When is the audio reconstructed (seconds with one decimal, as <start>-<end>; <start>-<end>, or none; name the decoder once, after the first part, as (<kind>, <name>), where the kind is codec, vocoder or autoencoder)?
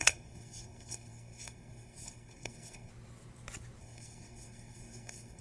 0.0-2.9 (codec, SNAC); 3.8-5.4